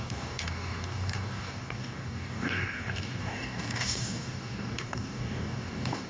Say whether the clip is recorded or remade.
remade